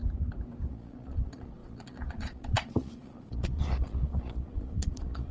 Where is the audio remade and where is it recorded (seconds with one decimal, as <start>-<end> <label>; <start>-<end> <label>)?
0.0-0.7 recorded; 0.7-5.3 remade